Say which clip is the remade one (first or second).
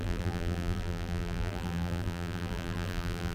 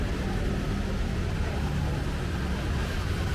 first